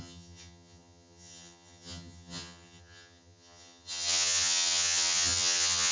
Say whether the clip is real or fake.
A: fake